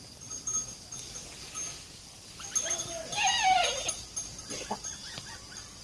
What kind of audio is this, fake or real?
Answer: real